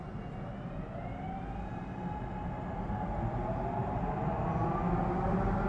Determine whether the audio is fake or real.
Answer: real